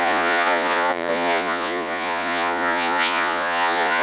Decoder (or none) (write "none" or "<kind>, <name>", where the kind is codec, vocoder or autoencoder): vocoder, Vocos